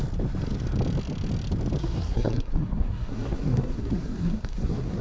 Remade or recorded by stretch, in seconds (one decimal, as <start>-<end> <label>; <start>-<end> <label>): 0.0-1.8 recorded; 1.8-5.0 remade